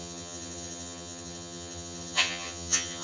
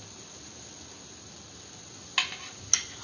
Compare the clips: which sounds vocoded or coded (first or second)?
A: first